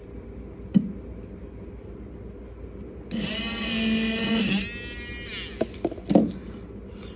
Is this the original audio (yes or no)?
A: yes